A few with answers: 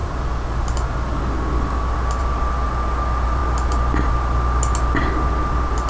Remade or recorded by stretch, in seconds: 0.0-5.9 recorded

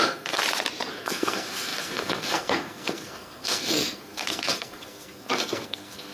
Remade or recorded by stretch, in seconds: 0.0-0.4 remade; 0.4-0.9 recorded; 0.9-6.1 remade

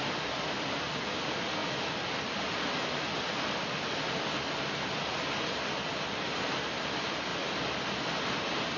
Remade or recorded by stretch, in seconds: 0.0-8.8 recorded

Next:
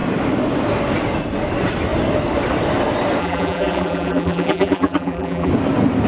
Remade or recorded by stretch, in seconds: 0.0-3.2 recorded; 3.2-5.5 remade; 5.5-6.1 recorded

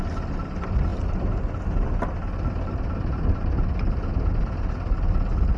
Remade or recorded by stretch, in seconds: 0.0-5.6 recorded

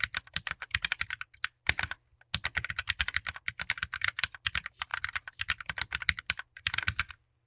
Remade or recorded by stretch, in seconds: 0.0-7.5 recorded